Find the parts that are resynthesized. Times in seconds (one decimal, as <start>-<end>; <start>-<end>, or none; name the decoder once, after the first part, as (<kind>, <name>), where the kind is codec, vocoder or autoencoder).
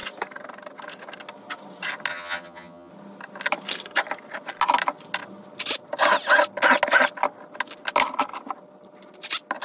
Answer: 2.1-2.9 (vocoder, HiFi-GAN)